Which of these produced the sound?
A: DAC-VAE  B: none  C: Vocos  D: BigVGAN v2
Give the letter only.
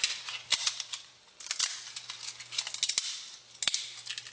B